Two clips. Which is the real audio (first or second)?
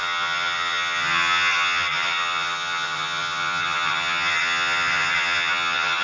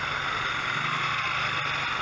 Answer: second